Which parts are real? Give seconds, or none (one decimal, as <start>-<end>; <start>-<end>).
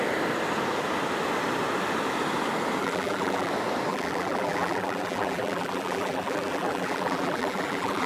0.0-2.8; 3.5-3.9